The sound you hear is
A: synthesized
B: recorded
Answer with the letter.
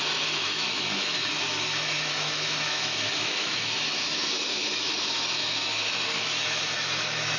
A